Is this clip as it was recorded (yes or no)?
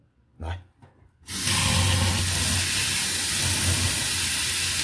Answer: yes